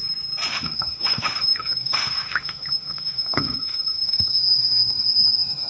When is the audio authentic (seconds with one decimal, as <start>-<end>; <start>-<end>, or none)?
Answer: 0.0-0.5